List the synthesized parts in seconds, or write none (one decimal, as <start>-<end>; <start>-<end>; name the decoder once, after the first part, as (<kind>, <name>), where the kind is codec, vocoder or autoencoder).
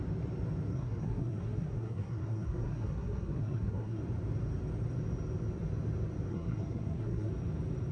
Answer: 0.7-4.0 (codec, SNAC); 6.3-7.3